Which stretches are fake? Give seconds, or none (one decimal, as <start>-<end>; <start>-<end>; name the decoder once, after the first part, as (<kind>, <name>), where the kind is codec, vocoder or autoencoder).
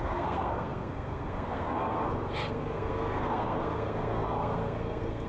0.0-5.3 (codec, SNAC)